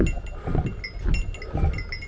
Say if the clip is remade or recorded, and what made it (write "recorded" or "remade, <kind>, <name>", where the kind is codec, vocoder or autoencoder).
recorded